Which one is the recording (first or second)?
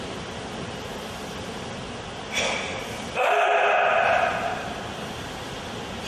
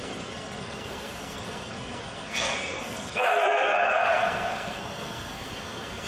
first